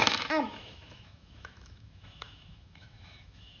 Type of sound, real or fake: fake